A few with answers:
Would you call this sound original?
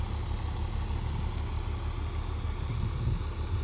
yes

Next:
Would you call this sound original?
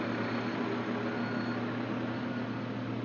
yes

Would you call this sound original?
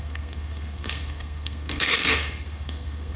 no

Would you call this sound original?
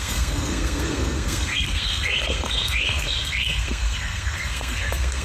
no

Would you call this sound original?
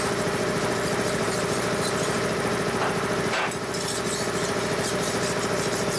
no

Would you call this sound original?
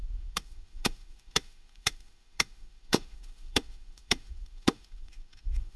no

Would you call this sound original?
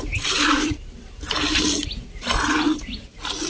yes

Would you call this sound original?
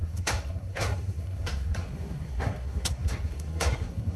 no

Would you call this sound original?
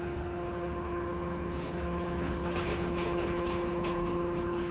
no